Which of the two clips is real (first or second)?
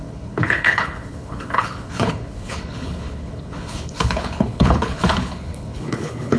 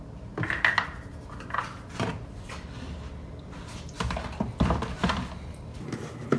second